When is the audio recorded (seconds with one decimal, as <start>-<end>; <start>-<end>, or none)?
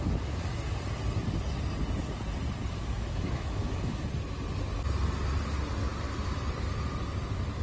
0.0-2.6; 4.0-7.6